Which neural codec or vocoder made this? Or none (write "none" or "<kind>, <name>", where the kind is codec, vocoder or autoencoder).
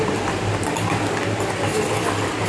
none